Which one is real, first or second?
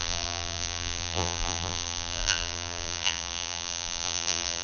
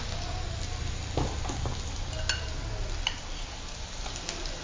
second